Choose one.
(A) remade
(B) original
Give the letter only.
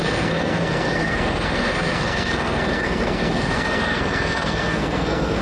A